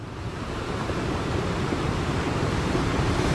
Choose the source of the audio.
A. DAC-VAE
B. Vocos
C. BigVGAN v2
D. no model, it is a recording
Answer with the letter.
C